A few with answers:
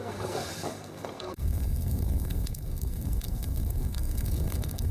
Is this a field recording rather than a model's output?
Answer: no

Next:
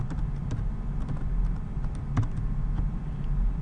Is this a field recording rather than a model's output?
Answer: yes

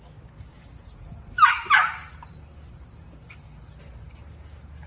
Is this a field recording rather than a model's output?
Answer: yes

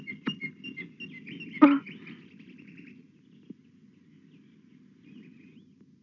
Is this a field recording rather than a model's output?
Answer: yes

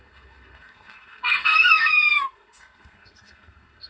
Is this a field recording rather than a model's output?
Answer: no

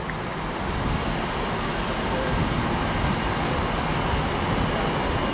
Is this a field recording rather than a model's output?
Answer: yes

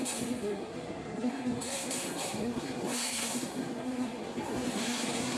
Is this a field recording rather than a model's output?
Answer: no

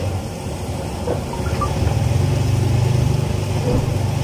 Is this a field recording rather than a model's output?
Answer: yes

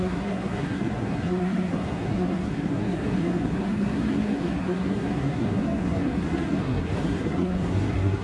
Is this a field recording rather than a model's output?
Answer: no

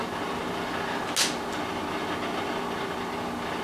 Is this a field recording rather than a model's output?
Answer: yes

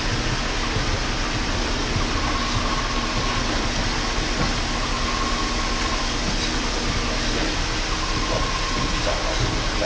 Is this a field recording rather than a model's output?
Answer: yes